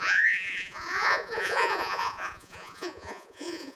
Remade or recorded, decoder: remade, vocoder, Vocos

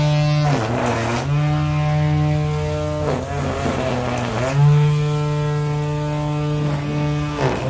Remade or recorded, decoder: recorded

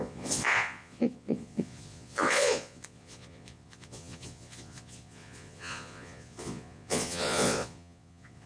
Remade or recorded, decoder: remade, vocoder, Vocos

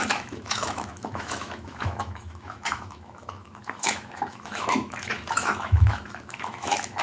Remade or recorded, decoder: remade, autoencoder, DAC-VAE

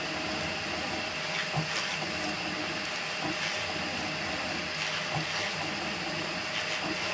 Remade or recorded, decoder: recorded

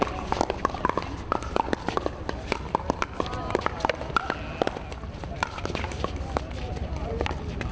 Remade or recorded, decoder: recorded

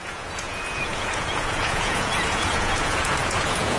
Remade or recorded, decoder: remade, vocoder, Vocos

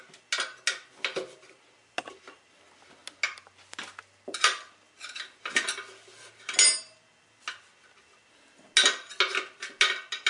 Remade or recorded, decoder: recorded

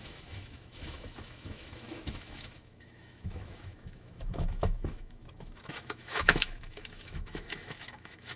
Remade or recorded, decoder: remade, autoencoder, DAC-VAE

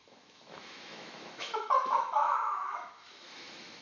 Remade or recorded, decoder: remade, autoencoder, DAC-VAE